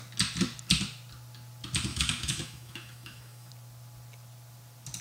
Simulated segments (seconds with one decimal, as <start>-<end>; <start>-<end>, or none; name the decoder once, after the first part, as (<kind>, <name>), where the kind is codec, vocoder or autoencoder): 1.9-3.5 (autoencoder, DAC-VAE)